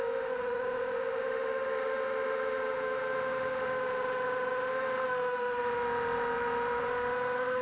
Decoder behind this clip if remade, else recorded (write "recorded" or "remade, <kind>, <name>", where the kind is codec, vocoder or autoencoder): remade, autoencoder, DAC-VAE